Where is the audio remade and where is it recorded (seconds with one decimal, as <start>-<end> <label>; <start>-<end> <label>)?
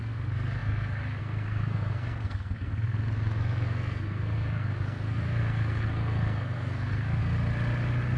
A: 0.0-7.2 remade; 7.2-8.2 recorded